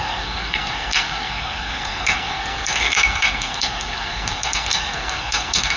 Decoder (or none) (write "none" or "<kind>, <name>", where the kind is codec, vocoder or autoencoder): codec, SNAC